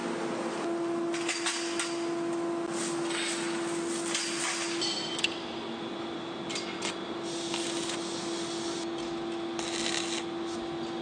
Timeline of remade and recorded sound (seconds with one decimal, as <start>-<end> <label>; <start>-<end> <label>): 0.0-11.0 recorded